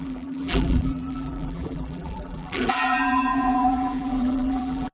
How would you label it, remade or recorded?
remade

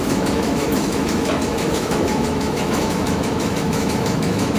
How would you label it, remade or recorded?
remade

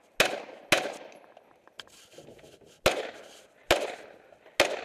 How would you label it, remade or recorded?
recorded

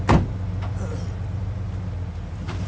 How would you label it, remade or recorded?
recorded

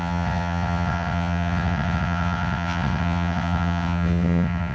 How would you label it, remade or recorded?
remade